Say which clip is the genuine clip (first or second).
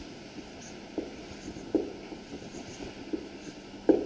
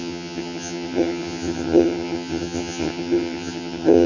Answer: first